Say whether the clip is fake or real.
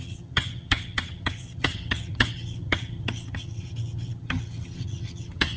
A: fake